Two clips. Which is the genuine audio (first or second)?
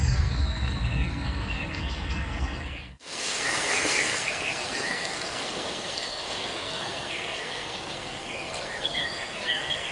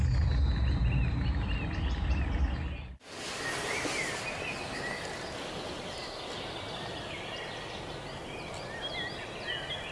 second